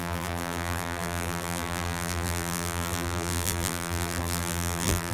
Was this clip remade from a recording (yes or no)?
yes